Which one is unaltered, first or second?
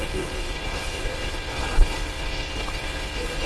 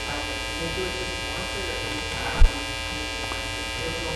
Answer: second